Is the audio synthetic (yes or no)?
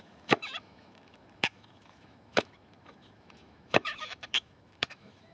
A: yes